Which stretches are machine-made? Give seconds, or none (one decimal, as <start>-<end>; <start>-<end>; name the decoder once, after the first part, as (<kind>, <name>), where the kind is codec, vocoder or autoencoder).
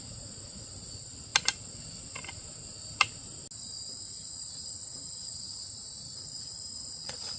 0.0-1.3 (vocoder, Vocos); 4.0-7.4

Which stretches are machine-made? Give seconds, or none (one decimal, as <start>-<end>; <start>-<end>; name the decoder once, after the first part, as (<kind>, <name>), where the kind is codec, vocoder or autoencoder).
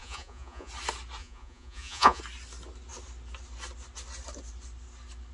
0.0-0.7 (vocoder, Vocos); 1.2-2.2